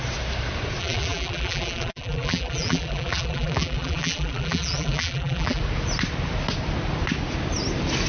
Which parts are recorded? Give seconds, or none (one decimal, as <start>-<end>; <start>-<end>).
0.0-0.8; 5.6-8.1